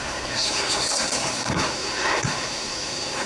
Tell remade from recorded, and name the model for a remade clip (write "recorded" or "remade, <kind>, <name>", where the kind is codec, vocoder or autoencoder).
remade, codec, SNAC